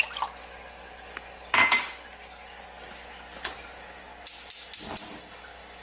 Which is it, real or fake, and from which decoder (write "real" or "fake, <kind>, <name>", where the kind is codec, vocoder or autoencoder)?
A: real